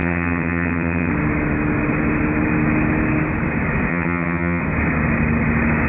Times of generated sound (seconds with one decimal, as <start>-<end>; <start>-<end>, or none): 0.0-1.1; 3.9-4.6